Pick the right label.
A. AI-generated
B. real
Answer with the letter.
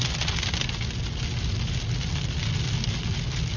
B